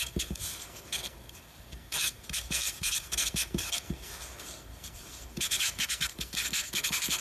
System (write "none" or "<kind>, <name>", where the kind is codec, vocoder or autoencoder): codec, SNAC